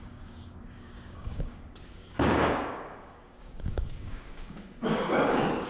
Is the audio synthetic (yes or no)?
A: yes